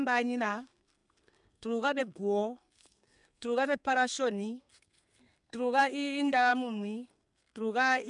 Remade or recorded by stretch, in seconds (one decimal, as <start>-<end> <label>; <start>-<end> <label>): 0.0-8.1 remade